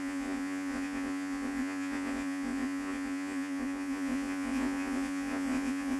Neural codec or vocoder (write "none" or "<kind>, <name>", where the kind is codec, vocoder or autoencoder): vocoder, Vocos